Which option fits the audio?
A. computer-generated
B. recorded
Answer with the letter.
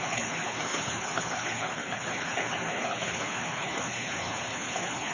A